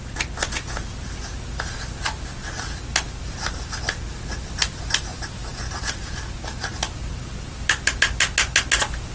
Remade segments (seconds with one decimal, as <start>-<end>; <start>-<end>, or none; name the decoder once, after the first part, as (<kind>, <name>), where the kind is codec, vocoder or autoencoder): none